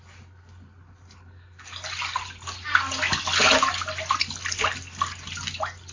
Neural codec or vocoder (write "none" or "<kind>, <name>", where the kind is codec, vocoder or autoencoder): none